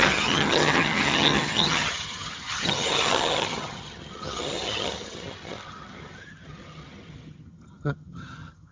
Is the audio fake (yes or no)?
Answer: yes